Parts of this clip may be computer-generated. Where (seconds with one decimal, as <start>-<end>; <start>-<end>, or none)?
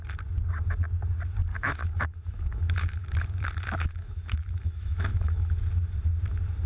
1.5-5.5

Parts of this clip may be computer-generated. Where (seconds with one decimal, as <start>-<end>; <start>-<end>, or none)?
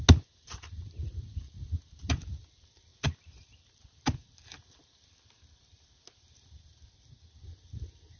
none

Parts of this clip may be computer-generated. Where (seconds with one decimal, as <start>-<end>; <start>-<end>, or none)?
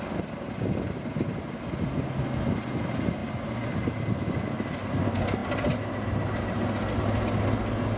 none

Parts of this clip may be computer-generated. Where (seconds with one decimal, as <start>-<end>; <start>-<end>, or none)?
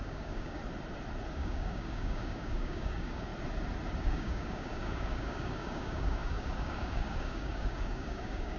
0.0-0.6; 1.3-3.3; 4.0-8.6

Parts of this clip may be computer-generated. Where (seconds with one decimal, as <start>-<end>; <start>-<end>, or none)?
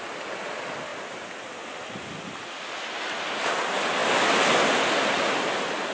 none